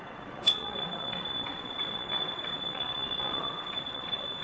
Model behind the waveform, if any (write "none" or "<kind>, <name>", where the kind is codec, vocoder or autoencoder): vocoder, WaveNeXt